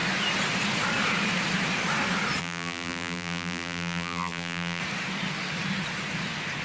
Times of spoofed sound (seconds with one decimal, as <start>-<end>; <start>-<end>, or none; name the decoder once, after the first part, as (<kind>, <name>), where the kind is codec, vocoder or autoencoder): 2.4-4.8 (vocoder, BigVGAN v2)